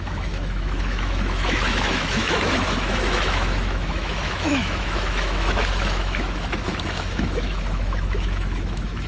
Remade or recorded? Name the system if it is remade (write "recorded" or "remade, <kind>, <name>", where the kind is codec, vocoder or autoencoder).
remade, autoencoder, DAC-VAE